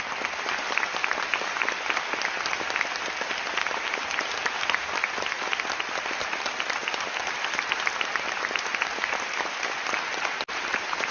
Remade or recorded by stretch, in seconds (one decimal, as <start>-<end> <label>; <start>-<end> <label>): 0.0-11.1 recorded